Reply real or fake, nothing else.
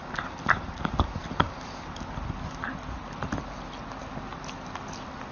real